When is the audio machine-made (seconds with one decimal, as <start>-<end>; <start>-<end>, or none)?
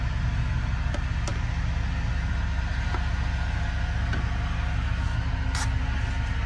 none